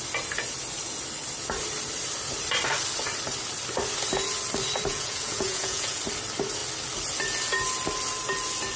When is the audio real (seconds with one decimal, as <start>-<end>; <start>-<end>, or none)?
0.0-4.9; 6.0-8.8